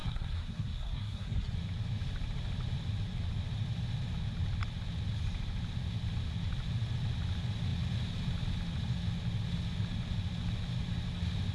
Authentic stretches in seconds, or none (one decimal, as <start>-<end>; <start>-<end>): 1.5-11.5